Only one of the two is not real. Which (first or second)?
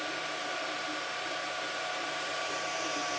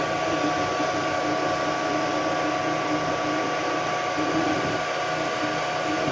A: first